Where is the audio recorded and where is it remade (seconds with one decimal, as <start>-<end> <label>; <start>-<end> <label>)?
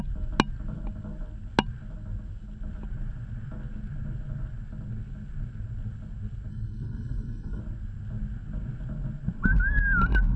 0.0-6.5 recorded; 6.5-7.6 remade; 7.6-10.4 recorded